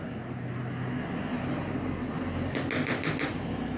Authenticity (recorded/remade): recorded